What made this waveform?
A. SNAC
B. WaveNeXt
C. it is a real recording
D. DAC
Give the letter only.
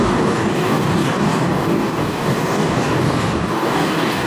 D